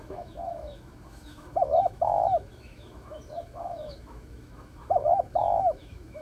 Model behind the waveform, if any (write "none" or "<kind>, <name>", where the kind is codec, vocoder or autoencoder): autoencoder, DAC-VAE